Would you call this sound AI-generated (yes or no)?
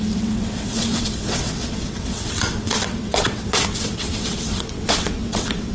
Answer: yes